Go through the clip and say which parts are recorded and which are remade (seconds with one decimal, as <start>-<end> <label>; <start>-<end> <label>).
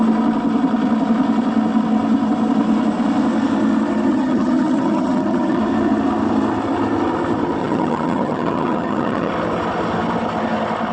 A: 0.0-4.1 recorded; 4.1-5.6 remade; 5.6-7.6 recorded; 7.6-9.3 remade; 9.3-10.9 recorded